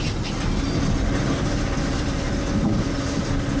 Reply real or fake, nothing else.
real